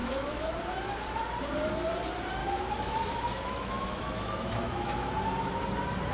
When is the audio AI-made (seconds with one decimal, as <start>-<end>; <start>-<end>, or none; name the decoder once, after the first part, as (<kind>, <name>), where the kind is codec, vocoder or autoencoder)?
0.0-0.5 (autoencoder, DAC-VAE); 2.4-5.1